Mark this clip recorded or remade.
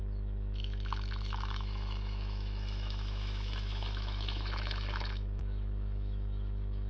remade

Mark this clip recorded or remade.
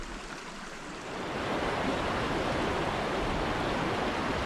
recorded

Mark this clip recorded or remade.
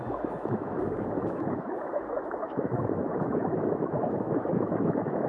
remade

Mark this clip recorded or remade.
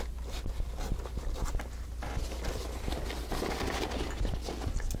recorded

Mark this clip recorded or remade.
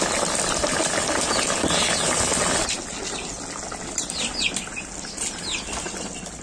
recorded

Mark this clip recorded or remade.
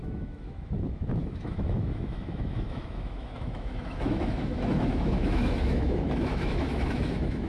remade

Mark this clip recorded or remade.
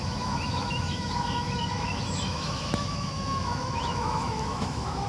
remade